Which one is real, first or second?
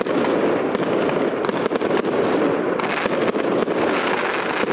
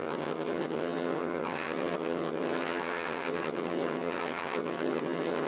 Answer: first